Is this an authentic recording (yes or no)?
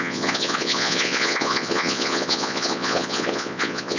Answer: no